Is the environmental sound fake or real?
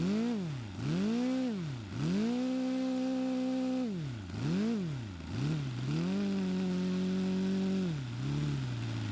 real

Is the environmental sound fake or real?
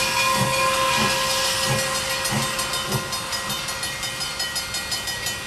real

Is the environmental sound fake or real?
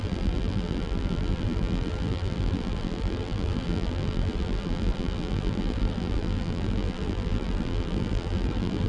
fake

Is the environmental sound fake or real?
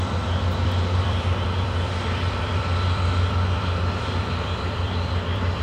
fake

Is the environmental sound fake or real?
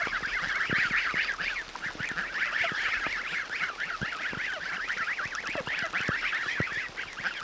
real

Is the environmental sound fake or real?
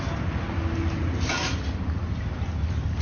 real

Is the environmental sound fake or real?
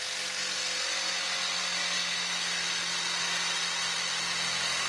real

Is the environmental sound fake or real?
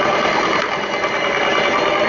fake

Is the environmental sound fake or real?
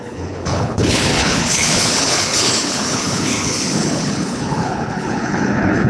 fake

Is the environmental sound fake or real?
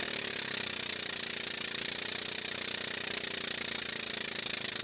real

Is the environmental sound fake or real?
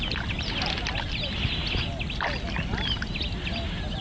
real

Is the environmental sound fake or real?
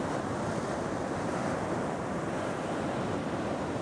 fake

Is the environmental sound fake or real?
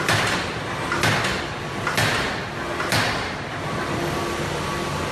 real